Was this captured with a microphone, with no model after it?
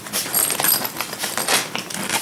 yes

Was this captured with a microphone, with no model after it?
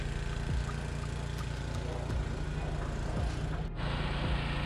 yes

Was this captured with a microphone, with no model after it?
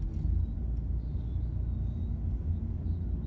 yes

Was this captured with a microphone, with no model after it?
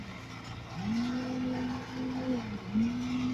yes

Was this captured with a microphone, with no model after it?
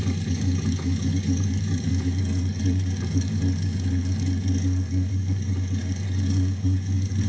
no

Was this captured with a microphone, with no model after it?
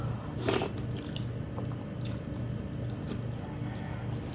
yes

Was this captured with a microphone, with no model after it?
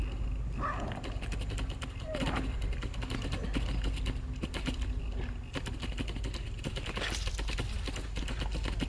yes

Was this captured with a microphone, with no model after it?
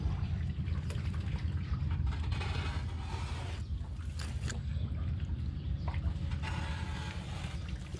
yes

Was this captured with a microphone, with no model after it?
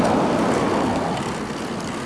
yes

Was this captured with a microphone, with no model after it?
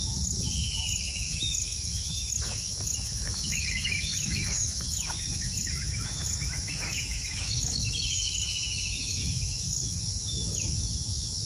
no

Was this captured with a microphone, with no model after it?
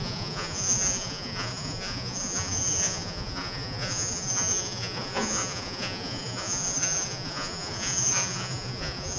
no